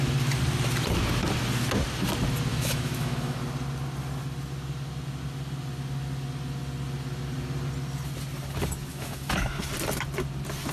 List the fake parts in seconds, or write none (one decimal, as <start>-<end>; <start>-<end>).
2.5-3.4; 8.9-9.6